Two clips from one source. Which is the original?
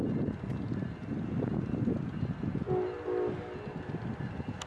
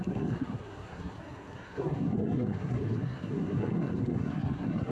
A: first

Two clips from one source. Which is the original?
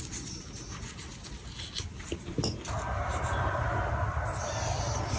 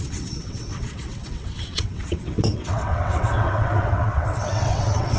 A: first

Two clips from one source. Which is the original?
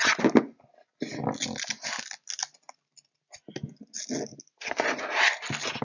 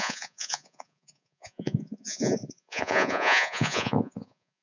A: first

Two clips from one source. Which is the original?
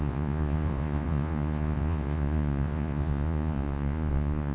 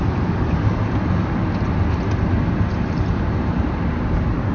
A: second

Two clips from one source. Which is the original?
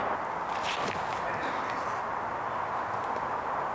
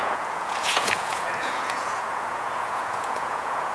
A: first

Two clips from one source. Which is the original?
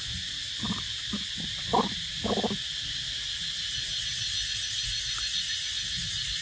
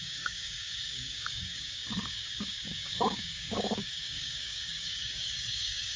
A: first